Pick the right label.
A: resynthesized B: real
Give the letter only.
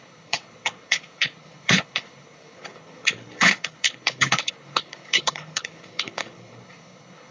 A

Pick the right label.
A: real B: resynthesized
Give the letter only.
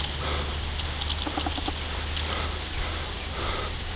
A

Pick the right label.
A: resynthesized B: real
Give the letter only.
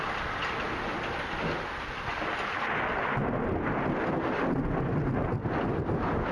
B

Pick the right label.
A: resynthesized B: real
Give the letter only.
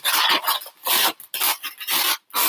B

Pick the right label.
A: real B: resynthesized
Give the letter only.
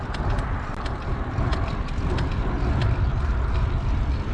A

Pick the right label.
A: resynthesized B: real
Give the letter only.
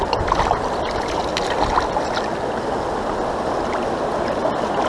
B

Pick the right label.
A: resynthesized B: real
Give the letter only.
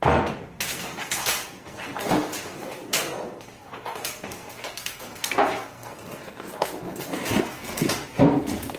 A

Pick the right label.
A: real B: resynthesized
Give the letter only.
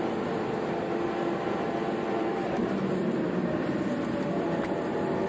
B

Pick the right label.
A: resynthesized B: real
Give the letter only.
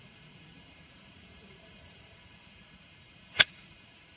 A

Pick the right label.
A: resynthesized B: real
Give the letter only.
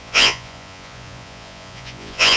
A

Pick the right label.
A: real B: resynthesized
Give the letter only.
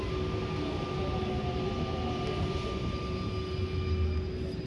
A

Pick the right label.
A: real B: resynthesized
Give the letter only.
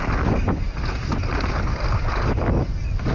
A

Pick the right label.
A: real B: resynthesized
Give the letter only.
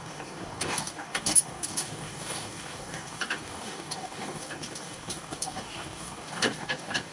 B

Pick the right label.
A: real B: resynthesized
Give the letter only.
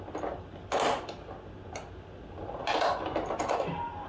A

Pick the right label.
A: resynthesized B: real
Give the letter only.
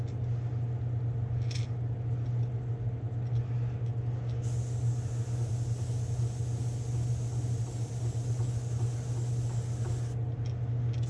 B